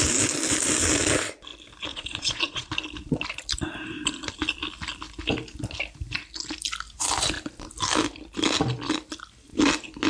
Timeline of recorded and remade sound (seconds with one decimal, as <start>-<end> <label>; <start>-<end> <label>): 0.0-1.9 recorded; 1.9-2.7 remade; 2.7-10.1 recorded